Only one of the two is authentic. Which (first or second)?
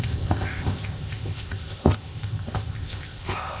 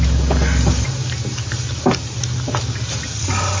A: second